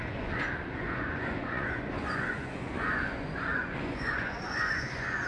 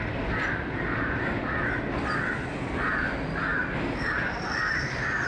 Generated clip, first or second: first